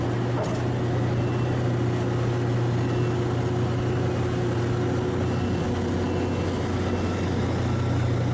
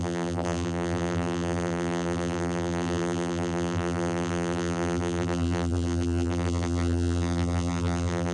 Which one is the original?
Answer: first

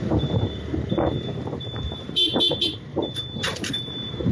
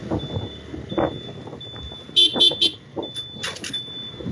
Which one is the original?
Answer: second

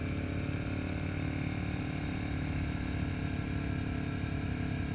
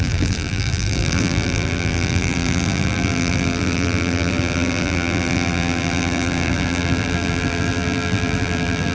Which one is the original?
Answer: first